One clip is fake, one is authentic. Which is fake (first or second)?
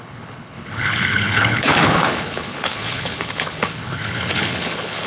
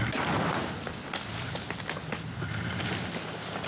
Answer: first